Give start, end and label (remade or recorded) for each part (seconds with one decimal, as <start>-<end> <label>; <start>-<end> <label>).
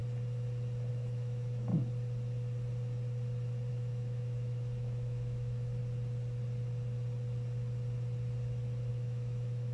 0.0-0.9 recorded; 0.9-1.7 remade; 1.7-3.7 recorded; 3.7-5.8 remade; 5.8-8.9 recorded; 8.9-9.7 remade